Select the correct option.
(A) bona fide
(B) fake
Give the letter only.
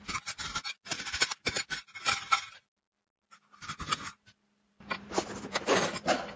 A